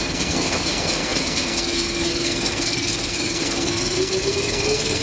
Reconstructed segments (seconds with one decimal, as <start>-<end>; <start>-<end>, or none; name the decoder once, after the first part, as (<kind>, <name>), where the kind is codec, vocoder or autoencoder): 0.0-5.0 (codec, SNAC)

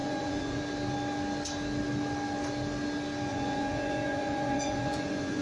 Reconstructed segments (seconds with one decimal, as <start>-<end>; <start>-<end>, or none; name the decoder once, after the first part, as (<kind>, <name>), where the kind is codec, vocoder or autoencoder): 0.0-0.6 (vocoder, Vocos); 3.3-5.4